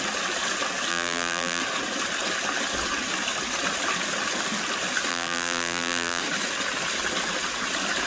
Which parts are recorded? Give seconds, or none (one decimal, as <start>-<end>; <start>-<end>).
0.0-0.9; 1.6-5.1; 6.2-8.1